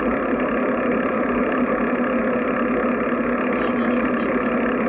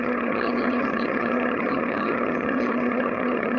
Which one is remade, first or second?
second